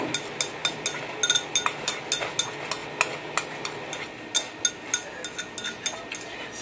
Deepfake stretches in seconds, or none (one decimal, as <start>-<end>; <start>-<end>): none